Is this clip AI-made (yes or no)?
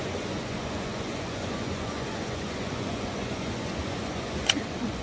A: yes